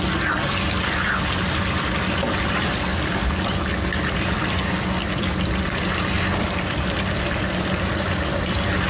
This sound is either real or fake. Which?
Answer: real